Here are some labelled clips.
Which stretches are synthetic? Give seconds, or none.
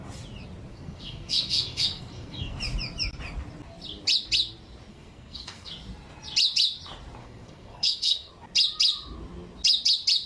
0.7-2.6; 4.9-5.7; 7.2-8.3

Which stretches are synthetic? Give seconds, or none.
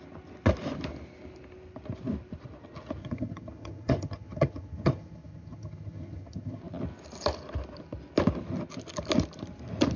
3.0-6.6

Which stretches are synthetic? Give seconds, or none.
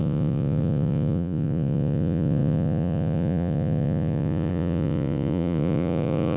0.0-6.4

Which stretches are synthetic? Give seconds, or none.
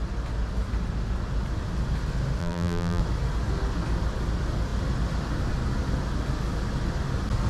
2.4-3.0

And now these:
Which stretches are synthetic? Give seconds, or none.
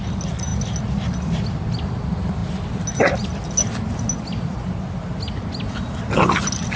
none